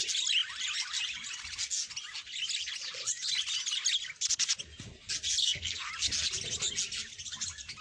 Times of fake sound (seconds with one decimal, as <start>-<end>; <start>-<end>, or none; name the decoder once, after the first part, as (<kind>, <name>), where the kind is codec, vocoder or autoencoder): 5.4-5.9 (codec, SNAC)